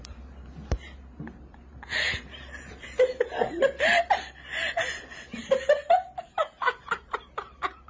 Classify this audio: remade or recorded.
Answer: remade